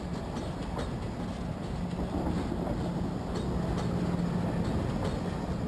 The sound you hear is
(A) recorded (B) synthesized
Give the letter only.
A